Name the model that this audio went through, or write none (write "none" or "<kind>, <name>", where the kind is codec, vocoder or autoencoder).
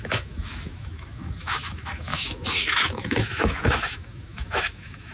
autoencoder, DAC-VAE